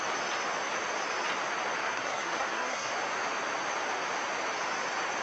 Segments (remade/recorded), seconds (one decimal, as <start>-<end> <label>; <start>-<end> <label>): 0.0-1.8 recorded; 1.8-2.9 remade; 2.9-5.2 recorded

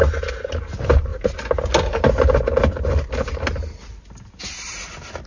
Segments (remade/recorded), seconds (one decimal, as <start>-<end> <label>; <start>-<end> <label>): 0.0-5.3 recorded

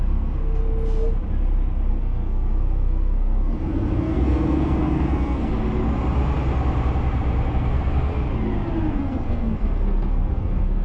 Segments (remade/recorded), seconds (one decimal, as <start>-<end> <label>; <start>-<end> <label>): 0.0-0.6 remade; 0.6-1.9 recorded; 1.9-5.5 remade; 5.5-7.5 recorded; 7.5-8.1 remade; 8.1-8.9 recorded; 8.9-10.8 remade